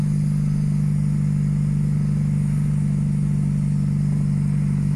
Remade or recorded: recorded